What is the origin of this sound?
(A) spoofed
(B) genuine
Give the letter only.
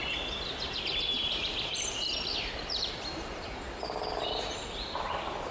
A